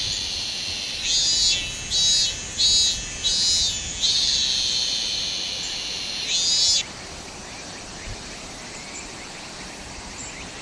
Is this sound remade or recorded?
recorded